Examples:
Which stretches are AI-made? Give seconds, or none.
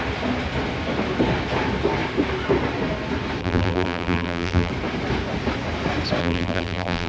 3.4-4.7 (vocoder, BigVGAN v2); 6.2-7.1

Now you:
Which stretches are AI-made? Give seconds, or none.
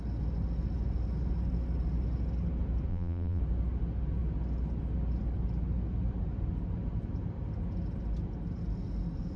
2.9-3.4 (vocoder, BigVGAN v2)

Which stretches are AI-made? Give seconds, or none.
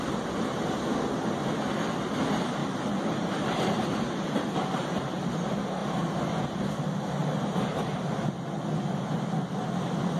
2.6-5.0 (vocoder, BigVGAN v2); 7.2-8.0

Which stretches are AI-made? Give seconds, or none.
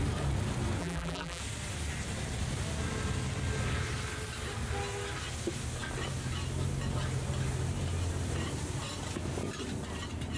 0.8-1.4 (vocoder, BigVGAN v2)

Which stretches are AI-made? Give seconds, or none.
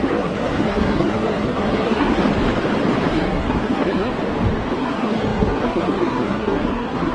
0.0-2.2 (codec, SNAC); 3.1-4.1; 4.8-7.1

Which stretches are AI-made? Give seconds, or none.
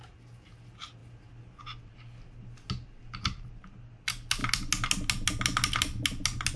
none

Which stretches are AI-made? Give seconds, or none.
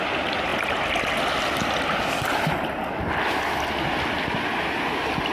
none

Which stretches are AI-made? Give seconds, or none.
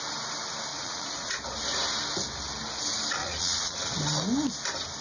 0.7-1.4 (vocoder, Vocos); 3.2-3.9